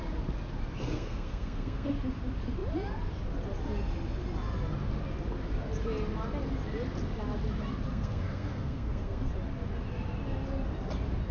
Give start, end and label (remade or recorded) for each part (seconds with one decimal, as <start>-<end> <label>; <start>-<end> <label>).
0.0-0.8 recorded; 0.8-1.9 remade; 1.9-7.9 recorded; 7.9-9.3 remade; 9.3-11.3 recorded